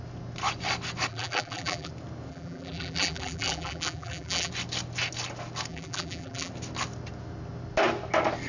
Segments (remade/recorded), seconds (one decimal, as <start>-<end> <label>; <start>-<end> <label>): 0.0-1.1 recorded; 1.1-1.9 remade; 1.9-2.3 recorded; 2.3-4.5 remade; 4.5-5.7 recorded; 5.7-6.5 remade; 6.5-8.5 recorded

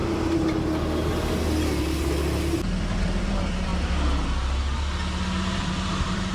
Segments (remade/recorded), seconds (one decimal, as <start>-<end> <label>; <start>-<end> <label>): 0.0-3.2 recorded; 3.2-3.7 remade; 3.7-5.6 recorded; 5.6-6.3 remade

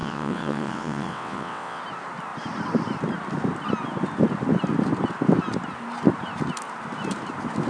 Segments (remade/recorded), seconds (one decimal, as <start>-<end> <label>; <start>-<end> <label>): 0.0-1.8 remade; 1.8-7.7 recorded

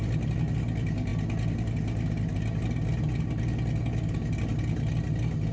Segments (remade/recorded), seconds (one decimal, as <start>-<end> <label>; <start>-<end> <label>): 0.0-5.5 recorded

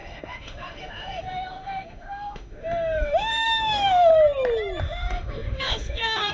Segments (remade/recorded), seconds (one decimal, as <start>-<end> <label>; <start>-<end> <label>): 0.0-4.1 remade; 4.1-4.8 recorded; 4.8-6.3 remade

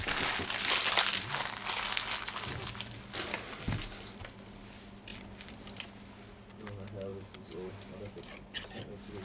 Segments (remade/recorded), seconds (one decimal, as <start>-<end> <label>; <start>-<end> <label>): 0.0-9.2 recorded

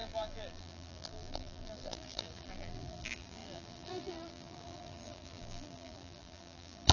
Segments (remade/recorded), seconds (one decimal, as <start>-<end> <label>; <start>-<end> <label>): 0.0-6.9 remade

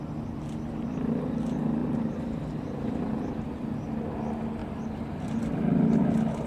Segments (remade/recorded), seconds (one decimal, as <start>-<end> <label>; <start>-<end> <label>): 0.0-1.8 recorded; 1.8-3.2 remade; 3.2-4.6 recorded; 4.6-5.4 remade; 5.4-6.5 recorded